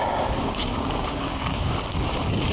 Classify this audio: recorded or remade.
remade